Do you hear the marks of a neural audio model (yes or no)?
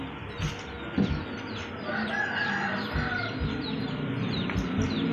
yes